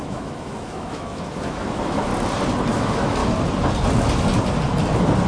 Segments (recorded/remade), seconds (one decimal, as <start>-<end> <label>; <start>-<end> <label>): 0.0-2.1 remade; 2.1-2.7 recorded; 2.7-3.2 remade; 3.2-5.3 recorded